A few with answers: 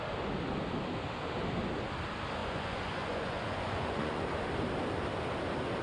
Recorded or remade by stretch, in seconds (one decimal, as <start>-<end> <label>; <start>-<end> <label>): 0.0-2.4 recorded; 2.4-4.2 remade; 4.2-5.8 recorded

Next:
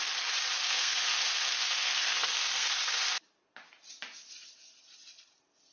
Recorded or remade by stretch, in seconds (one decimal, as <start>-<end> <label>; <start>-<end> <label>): 0.0-0.6 recorded; 0.6-2.9 remade; 2.9-5.7 recorded

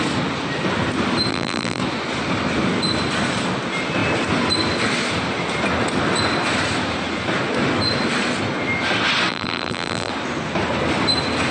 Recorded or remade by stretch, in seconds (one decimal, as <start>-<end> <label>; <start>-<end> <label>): 0.0-1.3 recorded; 1.3-1.8 remade; 1.8-9.3 recorded; 9.3-10.1 remade; 10.1-11.5 recorded